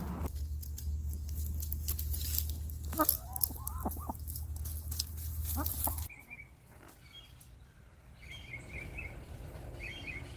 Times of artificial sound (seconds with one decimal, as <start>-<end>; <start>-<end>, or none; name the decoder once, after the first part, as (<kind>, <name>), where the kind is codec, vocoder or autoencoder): none